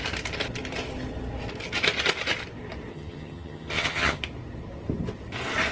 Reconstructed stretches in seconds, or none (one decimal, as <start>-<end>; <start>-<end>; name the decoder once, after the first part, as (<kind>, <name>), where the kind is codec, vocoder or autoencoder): 2.9-4.2 (vocoder, HiFi-GAN)